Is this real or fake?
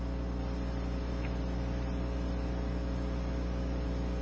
real